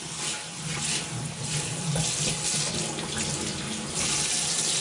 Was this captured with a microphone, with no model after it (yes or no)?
yes